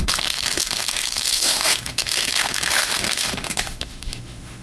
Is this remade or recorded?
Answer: remade